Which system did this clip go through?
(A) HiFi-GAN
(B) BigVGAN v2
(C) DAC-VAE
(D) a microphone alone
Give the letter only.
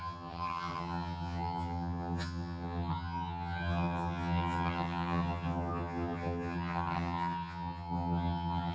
A